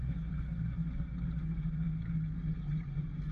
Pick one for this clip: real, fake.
real